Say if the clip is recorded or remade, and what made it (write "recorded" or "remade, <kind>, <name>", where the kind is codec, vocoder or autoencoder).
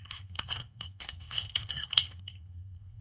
remade, codec, SNAC